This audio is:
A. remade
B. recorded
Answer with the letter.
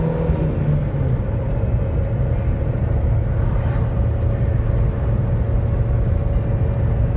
B